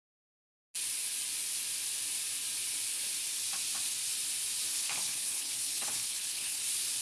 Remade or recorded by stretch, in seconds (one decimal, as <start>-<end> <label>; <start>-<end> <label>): 0.0-4.7 recorded; 4.7-6.6 remade; 6.6-7.0 recorded